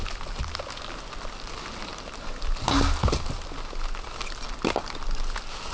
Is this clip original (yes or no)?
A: yes